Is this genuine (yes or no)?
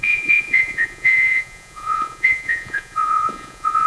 no